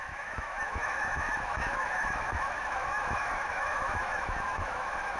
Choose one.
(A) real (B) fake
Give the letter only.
B